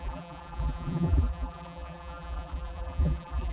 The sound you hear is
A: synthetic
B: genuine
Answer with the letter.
A